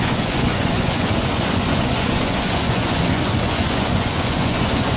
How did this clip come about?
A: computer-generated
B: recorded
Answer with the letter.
A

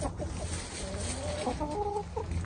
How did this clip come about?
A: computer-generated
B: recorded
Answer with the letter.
B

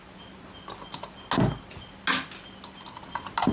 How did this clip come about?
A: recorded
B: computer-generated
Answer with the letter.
A